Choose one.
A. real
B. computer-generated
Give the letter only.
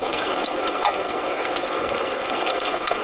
B